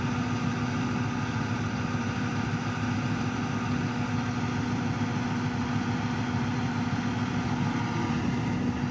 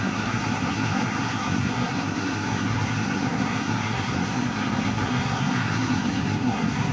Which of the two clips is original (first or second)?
first